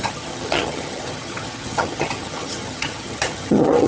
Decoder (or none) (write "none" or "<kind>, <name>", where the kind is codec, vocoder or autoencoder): vocoder, HiFi-GAN